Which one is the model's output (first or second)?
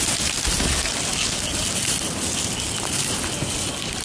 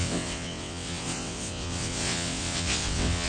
second